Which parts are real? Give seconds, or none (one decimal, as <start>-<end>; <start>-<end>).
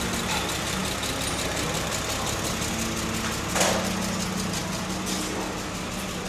0.0-4.6; 5.1-6.3